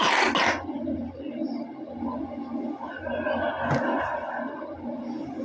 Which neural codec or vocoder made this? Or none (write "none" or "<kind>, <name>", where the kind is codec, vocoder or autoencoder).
none